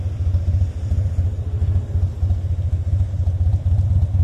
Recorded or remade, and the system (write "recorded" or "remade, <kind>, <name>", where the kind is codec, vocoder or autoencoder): recorded